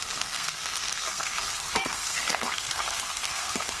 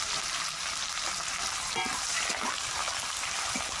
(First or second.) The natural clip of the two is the second